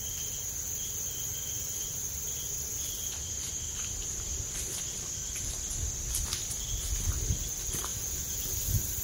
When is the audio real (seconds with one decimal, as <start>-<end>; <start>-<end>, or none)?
0.0-7.9; 8.4-9.0